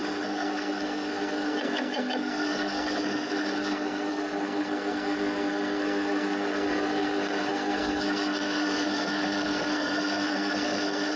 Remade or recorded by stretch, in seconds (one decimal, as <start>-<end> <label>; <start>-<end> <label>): 0.0-11.2 remade